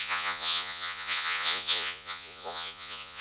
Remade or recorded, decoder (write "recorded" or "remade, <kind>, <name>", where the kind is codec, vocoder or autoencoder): remade, vocoder, Vocos